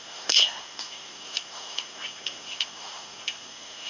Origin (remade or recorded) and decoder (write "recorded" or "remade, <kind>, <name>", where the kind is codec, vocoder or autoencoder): remade, codec, SNAC